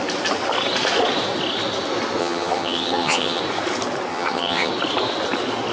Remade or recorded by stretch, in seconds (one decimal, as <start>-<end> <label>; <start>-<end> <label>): 0.0-2.2 recorded; 2.2-3.4 remade; 3.4-4.1 recorded; 4.1-4.7 remade; 4.7-5.7 recorded